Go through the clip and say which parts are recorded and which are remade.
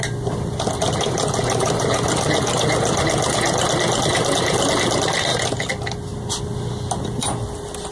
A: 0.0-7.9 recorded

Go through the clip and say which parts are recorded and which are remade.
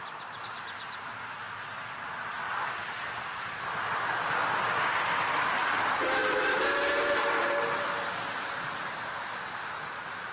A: 0.0-10.3 recorded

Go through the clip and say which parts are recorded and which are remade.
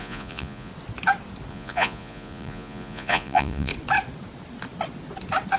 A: 0.0-0.7 remade; 0.7-1.5 recorded; 1.5-3.7 remade; 3.7-5.6 recorded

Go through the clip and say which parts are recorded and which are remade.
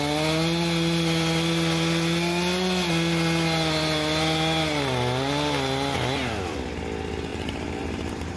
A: 0.0-7.3 recorded; 7.3-8.4 remade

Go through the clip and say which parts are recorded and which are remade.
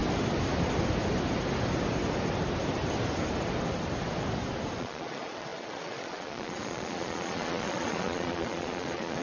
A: 0.0-4.8 recorded; 4.8-9.2 remade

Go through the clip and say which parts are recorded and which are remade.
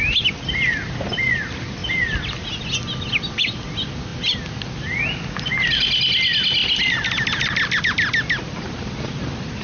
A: 0.0-9.6 recorded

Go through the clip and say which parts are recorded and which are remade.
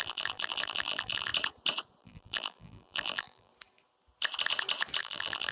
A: 0.0-1.3 remade; 1.3-2.0 recorded; 2.0-3.5 remade; 3.5-5.0 recorded; 5.0-5.5 remade